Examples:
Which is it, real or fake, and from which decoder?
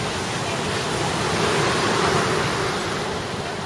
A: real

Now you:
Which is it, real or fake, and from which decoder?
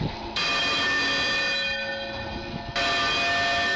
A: real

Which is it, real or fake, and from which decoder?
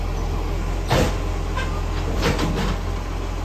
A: real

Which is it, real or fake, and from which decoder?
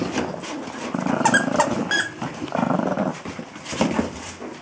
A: real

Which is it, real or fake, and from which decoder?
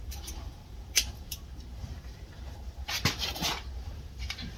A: fake, vocoder, BigVGAN v2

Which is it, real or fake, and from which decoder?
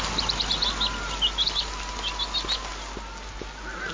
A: real